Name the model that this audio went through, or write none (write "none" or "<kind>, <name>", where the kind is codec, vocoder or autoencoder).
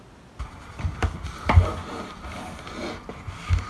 none